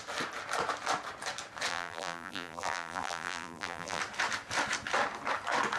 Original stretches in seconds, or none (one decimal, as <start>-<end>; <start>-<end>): 0.0-1.7; 4.0-5.8